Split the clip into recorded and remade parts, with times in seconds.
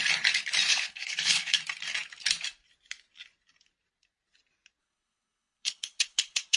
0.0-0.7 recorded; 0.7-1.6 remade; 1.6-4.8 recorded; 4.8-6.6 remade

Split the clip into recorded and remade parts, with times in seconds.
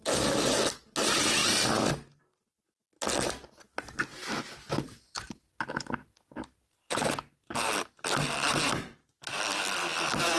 0.0-10.4 recorded